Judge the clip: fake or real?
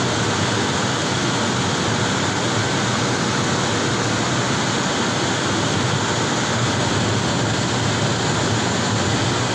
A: real